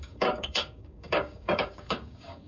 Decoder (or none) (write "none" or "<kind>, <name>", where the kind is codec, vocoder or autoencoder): codec, DAC